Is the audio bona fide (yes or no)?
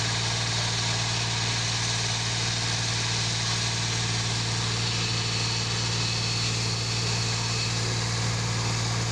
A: yes